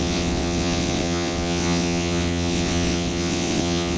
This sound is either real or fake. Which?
fake